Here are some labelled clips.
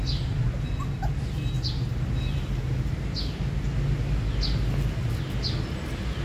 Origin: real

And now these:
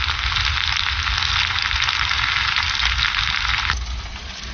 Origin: real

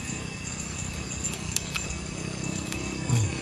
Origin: fake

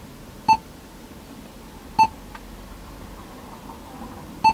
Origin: real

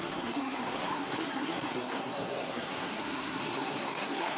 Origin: fake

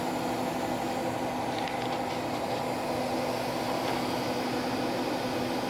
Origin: real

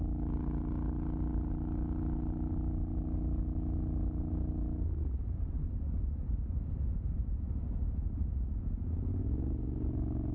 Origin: real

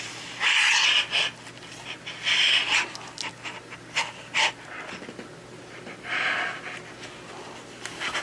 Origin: real